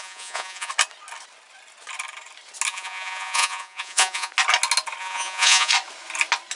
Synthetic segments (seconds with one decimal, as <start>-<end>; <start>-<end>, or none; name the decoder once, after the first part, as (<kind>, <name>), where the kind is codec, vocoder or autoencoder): 0.0-0.7 (vocoder, Vocos); 2.7-4.3; 5.0-5.7